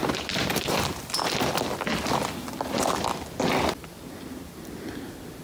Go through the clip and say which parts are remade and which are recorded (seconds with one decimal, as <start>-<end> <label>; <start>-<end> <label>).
0.0-1.0 remade; 1.0-5.4 recorded